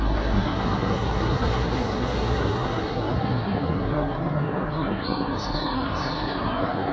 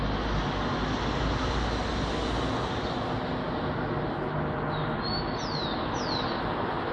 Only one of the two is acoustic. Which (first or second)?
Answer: second